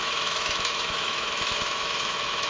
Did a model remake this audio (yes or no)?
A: yes